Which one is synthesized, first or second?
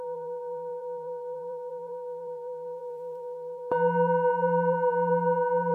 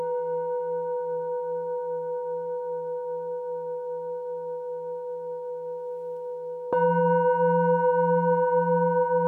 first